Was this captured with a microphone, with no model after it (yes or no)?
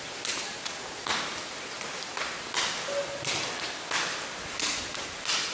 yes